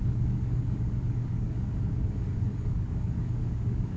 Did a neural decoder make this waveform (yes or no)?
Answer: yes